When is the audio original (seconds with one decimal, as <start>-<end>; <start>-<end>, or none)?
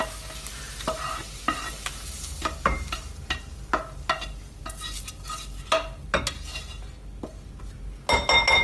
0.0-1.2; 3.7-8.6